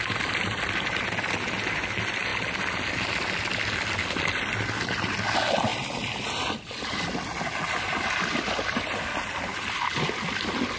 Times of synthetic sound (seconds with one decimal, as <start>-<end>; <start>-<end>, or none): none